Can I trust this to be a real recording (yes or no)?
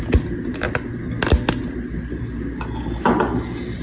yes